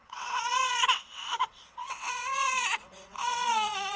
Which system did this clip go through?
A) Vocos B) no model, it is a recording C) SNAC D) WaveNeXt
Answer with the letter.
D